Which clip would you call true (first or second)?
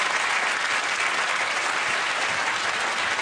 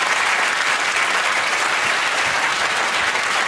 first